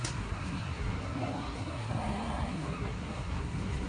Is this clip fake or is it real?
fake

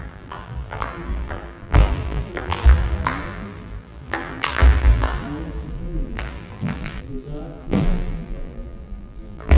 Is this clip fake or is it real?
fake